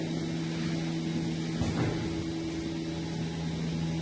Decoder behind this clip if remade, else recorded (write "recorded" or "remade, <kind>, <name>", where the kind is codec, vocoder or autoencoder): recorded